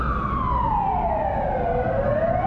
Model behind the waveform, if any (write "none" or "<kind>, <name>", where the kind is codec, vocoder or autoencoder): none